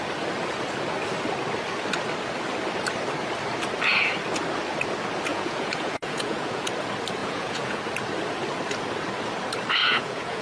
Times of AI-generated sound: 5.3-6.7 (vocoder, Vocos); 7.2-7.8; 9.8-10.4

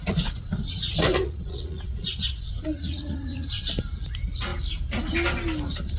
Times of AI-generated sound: 0.0-3.6 (vocoder, Vocos)

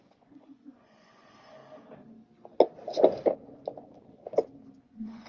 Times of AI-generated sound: 0.0-1.6 (vocoder, Vocos); 4.8-5.3

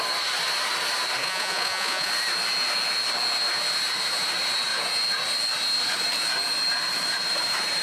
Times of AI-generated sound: 1.2-2.1 (vocoder, Vocos)

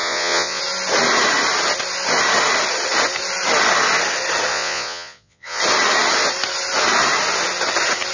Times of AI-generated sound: 0.0-0.6 (vocoder, Vocos); 4.5-5.6

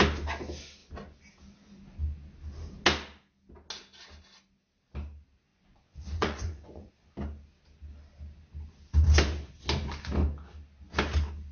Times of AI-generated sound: 5.5-6.9 (vocoder, Vocos)

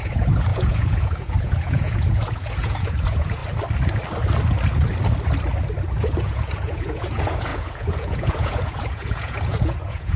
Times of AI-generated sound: 0.0-3.4 (vocoder, Vocos); 5.9-10.2